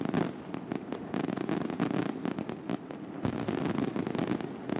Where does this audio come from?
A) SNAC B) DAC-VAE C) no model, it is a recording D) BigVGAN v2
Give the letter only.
C